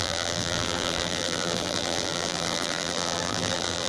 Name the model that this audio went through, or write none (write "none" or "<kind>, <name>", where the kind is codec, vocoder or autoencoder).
vocoder, BigVGAN v2